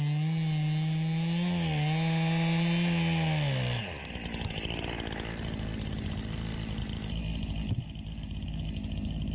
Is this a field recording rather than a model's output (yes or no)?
yes